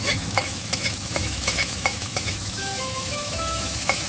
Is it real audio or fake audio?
fake